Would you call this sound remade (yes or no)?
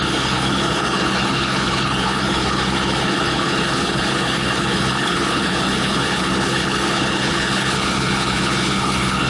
yes